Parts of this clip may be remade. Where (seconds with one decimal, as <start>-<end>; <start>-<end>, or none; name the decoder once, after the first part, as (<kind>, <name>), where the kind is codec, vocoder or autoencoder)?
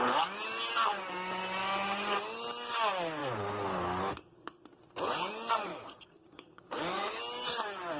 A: 5.7-7.2 (codec, DAC)